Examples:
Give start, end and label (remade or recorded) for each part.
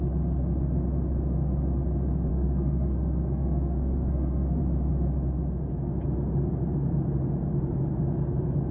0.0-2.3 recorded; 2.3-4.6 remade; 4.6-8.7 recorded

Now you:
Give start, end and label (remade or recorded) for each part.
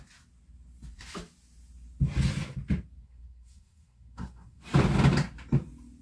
0.0-3.0 recorded; 3.0-4.6 remade; 4.6-6.0 recorded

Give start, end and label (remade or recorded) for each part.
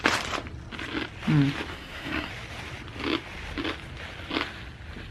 0.0-1.7 recorded; 1.7-2.3 remade; 2.3-5.1 recorded